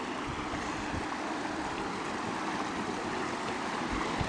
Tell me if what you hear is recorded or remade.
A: remade